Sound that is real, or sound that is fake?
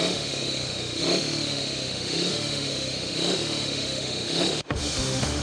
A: fake